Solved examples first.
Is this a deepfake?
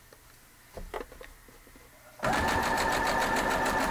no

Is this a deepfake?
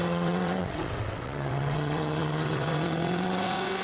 yes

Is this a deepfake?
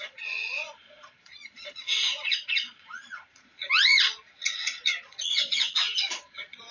yes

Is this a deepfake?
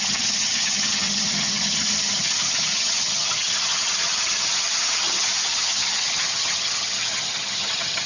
yes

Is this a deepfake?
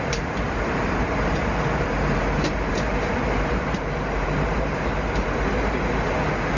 yes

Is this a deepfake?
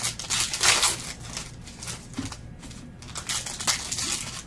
no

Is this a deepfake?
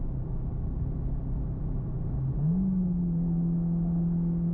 no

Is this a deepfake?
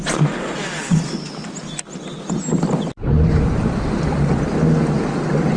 no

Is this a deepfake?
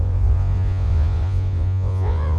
yes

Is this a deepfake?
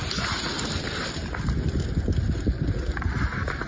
no